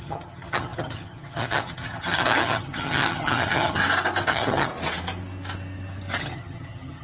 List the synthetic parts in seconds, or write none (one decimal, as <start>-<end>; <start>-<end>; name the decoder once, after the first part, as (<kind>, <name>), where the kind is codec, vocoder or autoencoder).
0.0-3.8 (vocoder, HiFi-GAN); 4.3-4.7; 6.2-7.0